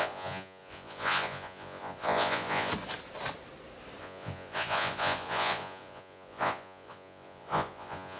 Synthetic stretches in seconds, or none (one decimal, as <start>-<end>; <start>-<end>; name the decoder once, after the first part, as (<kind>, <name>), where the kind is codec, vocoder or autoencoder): 0.0-2.7 (vocoder, Vocos); 4.0-8.2